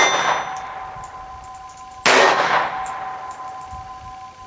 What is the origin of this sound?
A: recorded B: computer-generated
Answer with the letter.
A